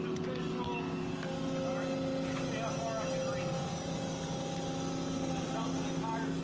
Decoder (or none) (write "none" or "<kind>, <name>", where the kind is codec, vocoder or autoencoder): none